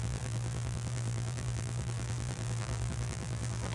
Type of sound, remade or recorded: remade